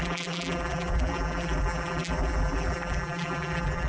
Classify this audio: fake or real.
fake